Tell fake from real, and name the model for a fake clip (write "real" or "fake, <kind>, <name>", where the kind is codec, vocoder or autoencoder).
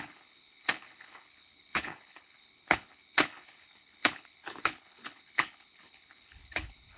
fake, codec, HILCodec